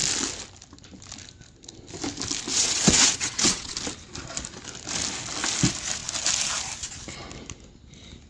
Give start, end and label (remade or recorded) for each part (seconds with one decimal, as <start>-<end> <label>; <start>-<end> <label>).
0.0-2.5 recorded; 2.5-3.7 remade; 3.7-8.3 recorded